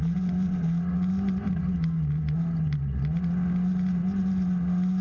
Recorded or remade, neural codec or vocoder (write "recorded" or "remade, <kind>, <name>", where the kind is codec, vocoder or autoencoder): recorded